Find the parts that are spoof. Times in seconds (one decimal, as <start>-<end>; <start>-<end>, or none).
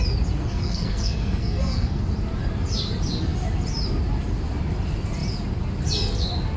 0.4-2.0